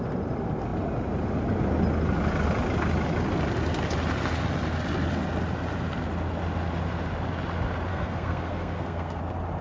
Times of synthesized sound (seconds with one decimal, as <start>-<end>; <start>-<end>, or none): 7.9-9.2